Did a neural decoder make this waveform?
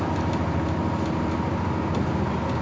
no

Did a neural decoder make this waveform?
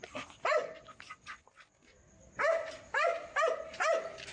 no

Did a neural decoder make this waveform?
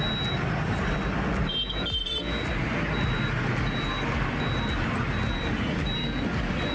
no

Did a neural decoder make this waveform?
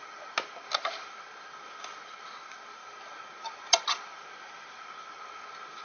no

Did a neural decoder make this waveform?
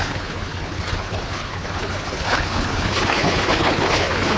yes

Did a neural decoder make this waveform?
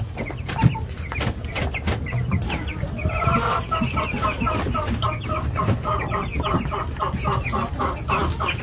no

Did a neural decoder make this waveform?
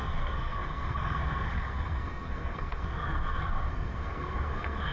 yes